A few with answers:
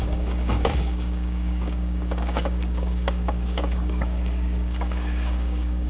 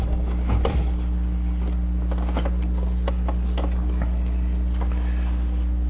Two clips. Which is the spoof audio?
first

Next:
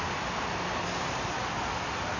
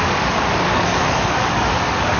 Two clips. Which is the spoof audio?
second